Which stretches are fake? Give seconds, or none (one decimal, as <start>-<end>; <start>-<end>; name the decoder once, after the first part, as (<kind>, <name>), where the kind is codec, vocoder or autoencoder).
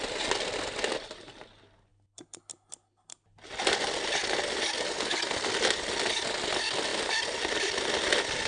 6.9-7.7 (vocoder, BigVGAN v2)